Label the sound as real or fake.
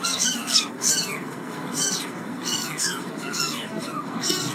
fake